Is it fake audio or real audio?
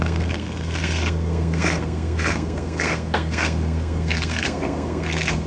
fake